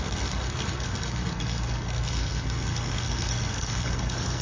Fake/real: fake